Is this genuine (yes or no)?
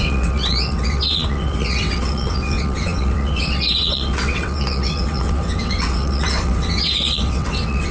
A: no